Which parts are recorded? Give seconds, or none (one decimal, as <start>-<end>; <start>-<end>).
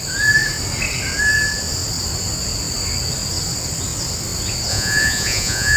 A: 0.0-4.7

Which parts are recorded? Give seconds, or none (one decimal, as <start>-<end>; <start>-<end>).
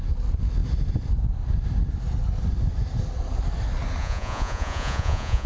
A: 0.0-4.0